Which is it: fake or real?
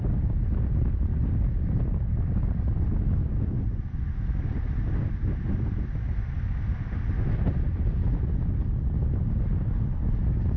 real